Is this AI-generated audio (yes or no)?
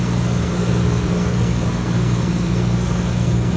yes